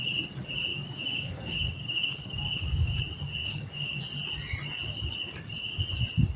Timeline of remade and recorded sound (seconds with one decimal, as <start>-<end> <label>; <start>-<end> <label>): 0.0-0.7 recorded; 0.7-3.0 remade; 3.0-3.4 recorded; 3.4-4.0 remade; 4.0-6.4 recorded